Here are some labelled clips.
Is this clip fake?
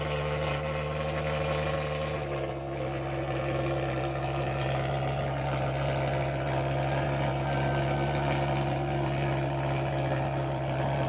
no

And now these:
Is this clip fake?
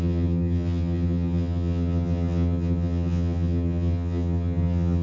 yes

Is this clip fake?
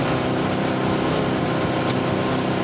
no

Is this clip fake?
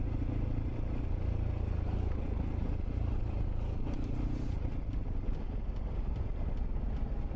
no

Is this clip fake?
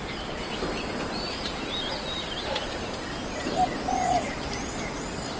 yes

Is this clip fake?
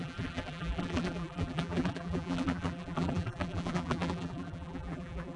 yes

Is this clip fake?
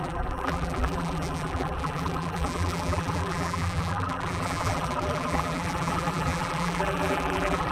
yes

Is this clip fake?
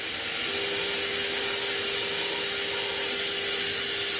no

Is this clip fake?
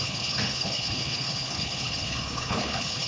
yes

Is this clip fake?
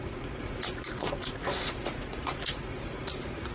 yes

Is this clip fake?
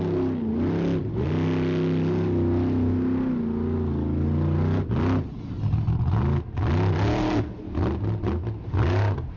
no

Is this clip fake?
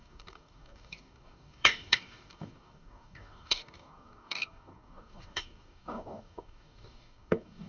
yes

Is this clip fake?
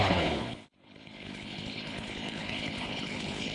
yes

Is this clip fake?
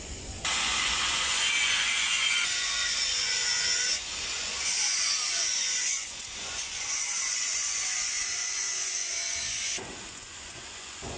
yes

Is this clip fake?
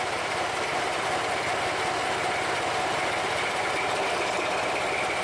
no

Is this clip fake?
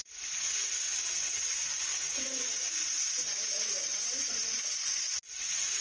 yes